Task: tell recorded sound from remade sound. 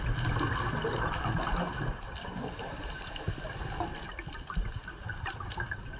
recorded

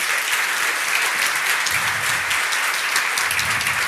recorded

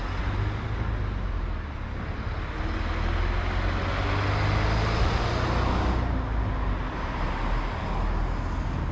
recorded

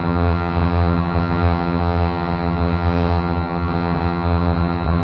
remade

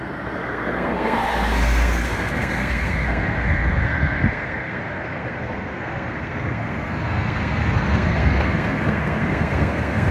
remade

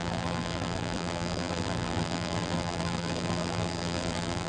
remade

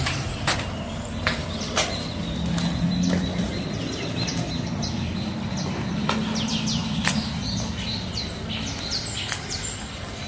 recorded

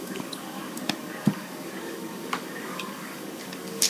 remade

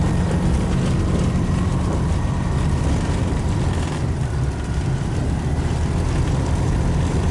remade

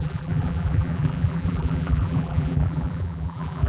remade